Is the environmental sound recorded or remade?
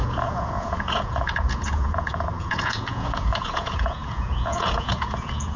remade